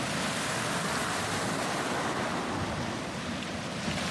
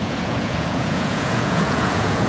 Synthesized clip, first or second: second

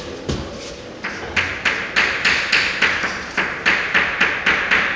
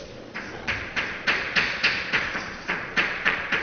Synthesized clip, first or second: second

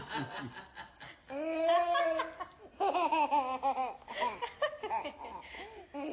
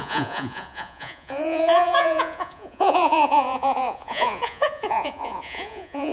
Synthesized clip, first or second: second